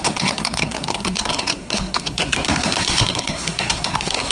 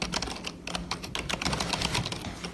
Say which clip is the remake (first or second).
first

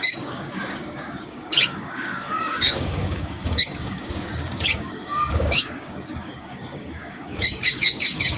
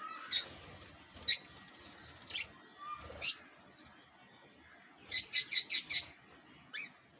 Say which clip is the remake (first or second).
first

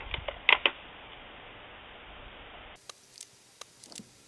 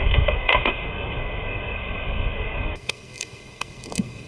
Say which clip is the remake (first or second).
second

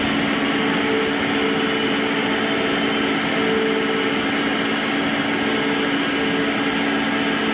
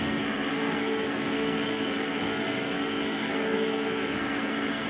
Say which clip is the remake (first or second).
second